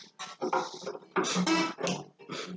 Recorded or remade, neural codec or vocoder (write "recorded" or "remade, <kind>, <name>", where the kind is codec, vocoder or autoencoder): recorded